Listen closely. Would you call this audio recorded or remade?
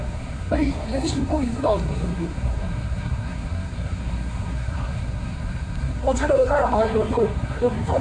remade